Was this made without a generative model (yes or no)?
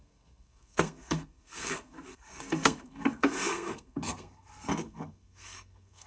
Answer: no